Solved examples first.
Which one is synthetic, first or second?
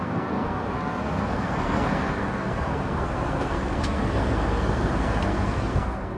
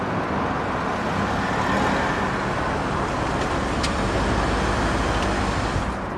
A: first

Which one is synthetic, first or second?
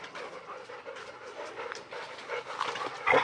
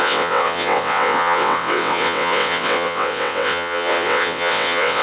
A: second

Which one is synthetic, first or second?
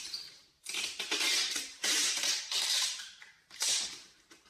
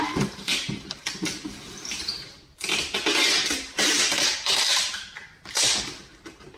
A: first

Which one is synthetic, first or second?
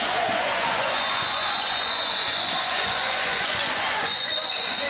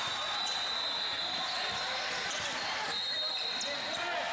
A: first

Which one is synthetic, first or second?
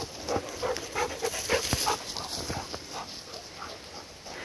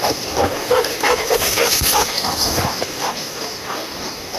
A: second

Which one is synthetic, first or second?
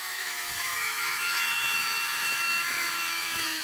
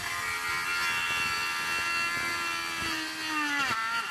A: first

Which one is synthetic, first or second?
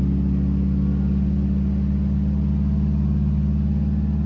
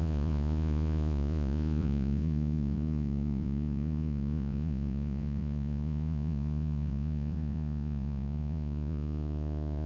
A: second